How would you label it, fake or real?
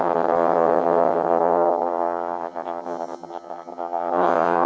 fake